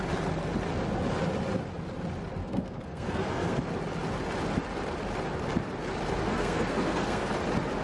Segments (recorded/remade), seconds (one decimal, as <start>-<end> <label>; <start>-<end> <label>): 0.0-2.4 recorded; 2.4-3.6 remade; 3.6-6.2 recorded; 6.2-7.3 remade; 7.3-7.8 recorded